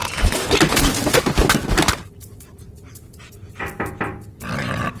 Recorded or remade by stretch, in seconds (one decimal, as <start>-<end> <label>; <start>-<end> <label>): 0.0-5.0 recorded